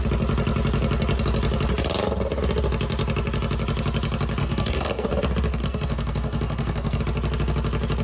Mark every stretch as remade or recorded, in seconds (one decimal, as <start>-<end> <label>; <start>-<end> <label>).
0.0-4.4 recorded; 4.4-5.1 remade; 5.1-5.6 recorded; 5.6-7.0 remade; 7.0-8.0 recorded